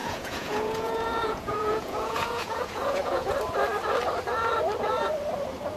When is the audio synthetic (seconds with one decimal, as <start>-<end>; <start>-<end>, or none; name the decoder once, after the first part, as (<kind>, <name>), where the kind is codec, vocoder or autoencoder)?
0.0-3.3 (vocoder, Vocos)